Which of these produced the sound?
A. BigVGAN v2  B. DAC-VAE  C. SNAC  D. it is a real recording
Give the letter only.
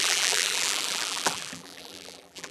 A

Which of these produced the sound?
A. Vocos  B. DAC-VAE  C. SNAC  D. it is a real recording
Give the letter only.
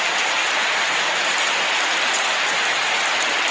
D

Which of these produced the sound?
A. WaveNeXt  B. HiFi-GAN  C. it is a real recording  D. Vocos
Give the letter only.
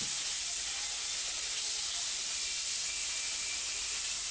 C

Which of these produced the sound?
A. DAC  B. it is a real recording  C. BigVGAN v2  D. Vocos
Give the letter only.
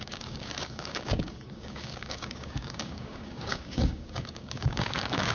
A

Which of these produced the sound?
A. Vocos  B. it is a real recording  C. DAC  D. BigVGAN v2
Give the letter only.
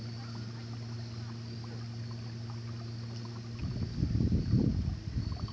B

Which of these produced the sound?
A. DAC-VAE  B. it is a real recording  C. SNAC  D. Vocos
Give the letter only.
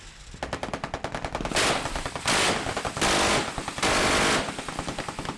B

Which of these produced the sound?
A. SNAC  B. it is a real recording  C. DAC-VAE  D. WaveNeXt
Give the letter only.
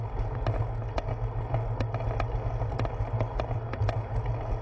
B